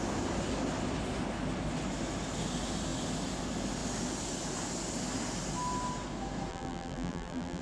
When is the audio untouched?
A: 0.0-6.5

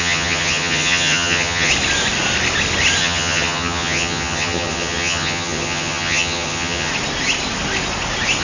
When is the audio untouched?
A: 1.7-3.0; 6.9-8.4

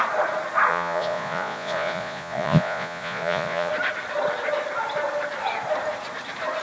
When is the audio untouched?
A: 0.0-0.7; 3.7-6.6